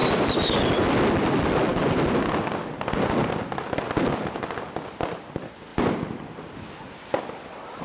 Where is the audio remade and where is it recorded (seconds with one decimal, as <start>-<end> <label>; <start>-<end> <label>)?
0.0-7.8 recorded